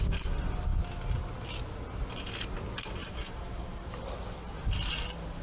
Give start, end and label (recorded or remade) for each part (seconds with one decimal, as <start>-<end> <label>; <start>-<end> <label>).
0.0-3.0 recorded; 3.0-3.9 remade; 3.9-5.4 recorded